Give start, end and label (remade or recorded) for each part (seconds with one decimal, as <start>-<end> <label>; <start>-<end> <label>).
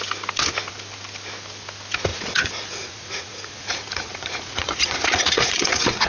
0.0-2.1 recorded; 2.1-6.1 remade